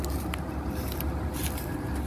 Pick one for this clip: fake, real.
real